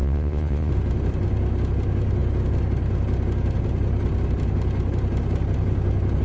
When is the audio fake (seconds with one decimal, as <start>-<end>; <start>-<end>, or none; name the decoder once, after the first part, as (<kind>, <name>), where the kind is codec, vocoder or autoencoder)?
0.0-0.7 (vocoder, Vocos)